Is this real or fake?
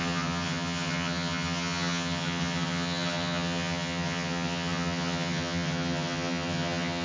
fake